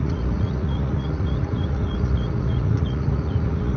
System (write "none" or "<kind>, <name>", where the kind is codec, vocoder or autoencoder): vocoder, Vocos